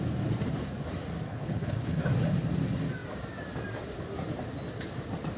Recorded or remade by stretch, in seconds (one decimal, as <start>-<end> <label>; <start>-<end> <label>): 0.0-1.3 recorded; 1.3-2.0 remade; 2.0-5.4 recorded

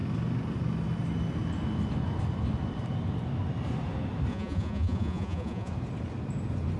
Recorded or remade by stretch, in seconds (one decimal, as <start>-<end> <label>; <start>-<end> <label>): 0.0-4.3 recorded; 4.3-5.7 remade; 5.7-6.8 recorded

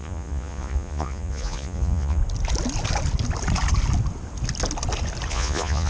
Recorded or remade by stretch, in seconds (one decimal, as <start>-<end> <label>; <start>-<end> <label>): 0.0-2.2 remade; 2.2-5.3 recorded; 5.3-5.9 remade

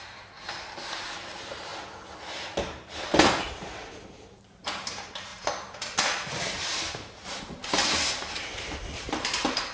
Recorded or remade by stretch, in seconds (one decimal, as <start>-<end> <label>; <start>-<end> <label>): 0.0-1.7 remade; 1.7-2.4 recorded; 2.4-7.6 remade; 7.6-8.3 recorded; 8.3-9.7 remade

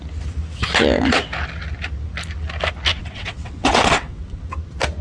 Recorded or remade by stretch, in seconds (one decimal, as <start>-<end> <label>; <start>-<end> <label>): 0.0-2.9 recorded; 2.9-4.5 remade; 4.5-5.0 recorded

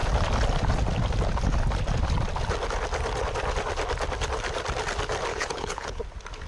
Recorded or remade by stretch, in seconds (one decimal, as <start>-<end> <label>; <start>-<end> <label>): 0.0-5.3 recorded; 5.3-6.0 remade; 6.0-6.5 recorded